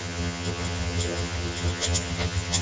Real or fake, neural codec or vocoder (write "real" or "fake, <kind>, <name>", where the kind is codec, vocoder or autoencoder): fake, vocoder, HiFi-GAN